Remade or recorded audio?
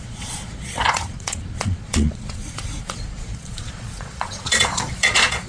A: remade